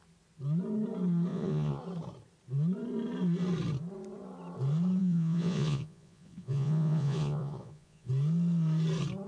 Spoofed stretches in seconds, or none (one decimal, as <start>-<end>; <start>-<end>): 1.3-1.8; 5.0-8.1